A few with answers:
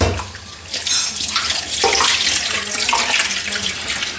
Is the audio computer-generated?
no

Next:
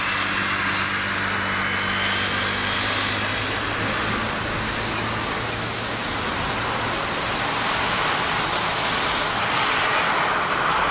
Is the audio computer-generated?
no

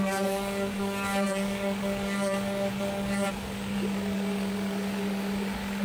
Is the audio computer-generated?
yes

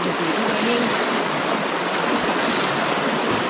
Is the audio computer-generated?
no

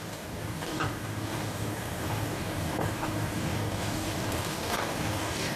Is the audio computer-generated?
yes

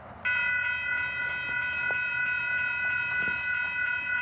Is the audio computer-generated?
no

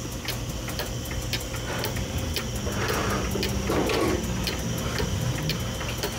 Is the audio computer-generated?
no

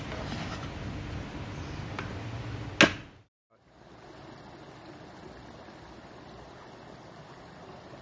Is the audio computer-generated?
no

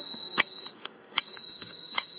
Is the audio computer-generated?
yes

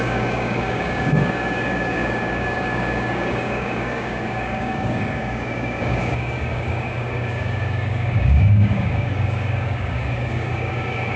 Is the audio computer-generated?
yes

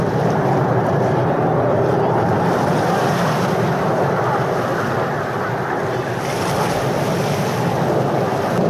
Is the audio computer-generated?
no